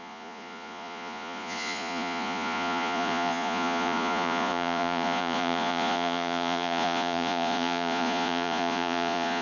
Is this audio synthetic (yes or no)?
yes